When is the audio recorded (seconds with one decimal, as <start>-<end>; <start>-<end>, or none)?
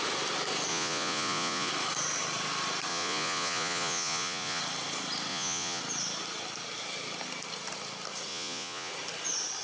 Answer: 0.0-0.7; 1.7-2.9; 4.6-5.3; 5.8-8.3; 8.9-9.6